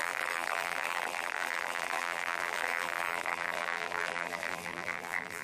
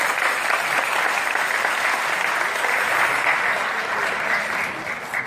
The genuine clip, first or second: second